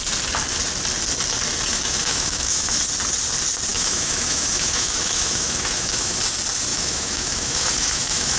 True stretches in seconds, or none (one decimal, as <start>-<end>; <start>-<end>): 0.0-1.7; 2.8-3.7; 6.2-6.7